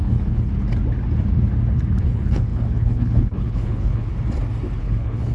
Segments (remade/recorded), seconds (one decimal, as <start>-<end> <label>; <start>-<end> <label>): 0.0-0.5 remade; 0.5-2.0 recorded; 2.0-4.1 remade; 4.1-4.8 recorded; 4.8-5.3 remade